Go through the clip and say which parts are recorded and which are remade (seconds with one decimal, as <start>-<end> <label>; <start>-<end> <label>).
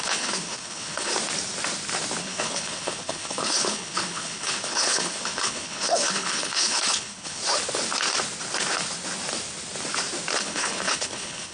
0.0-1.1 remade; 1.1-2.2 recorded; 2.2-7.4 remade; 7.4-10.4 recorded; 10.4-11.5 remade